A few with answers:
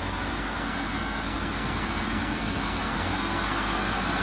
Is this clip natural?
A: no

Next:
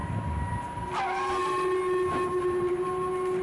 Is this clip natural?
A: yes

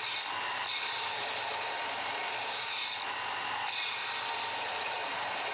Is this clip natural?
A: yes